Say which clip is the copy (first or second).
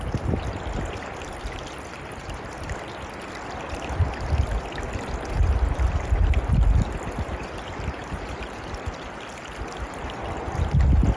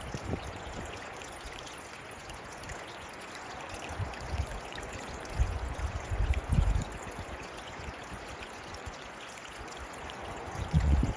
second